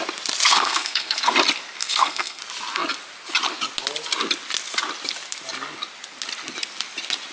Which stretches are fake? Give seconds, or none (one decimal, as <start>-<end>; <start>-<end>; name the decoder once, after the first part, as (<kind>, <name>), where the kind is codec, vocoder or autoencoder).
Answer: 0.5-1.3 (codec, SNAC); 1.8-2.4